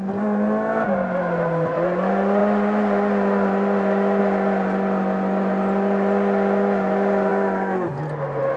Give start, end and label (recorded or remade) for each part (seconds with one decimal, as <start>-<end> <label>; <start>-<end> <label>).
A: 0.0-8.6 recorded